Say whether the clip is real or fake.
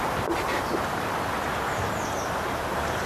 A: real